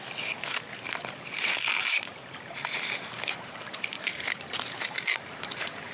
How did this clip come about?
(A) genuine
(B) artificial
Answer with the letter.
A